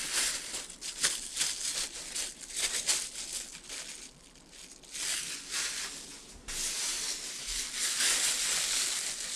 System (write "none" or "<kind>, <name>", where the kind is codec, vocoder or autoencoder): none